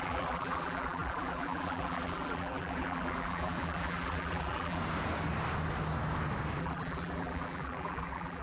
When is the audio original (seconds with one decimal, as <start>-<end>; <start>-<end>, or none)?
4.8-6.6